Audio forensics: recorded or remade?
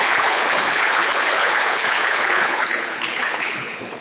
remade